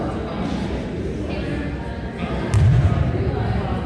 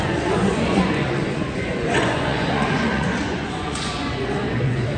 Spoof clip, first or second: second